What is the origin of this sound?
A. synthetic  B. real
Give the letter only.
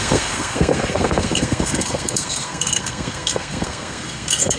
A